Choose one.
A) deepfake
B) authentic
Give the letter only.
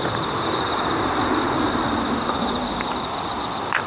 B